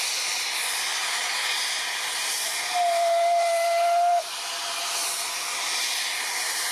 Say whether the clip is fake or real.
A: real